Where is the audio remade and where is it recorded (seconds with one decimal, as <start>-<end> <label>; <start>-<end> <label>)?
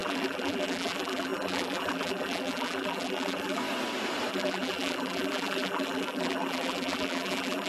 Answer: 0.0-3.6 remade; 3.6-4.3 recorded; 4.3-7.7 remade